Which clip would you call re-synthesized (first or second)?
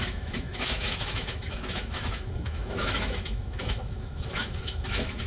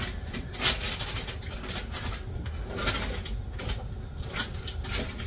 first